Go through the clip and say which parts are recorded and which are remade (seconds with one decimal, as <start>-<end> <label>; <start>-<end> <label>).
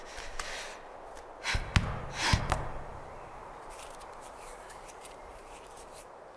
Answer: 0.0-2.4 recorded; 2.4-6.4 remade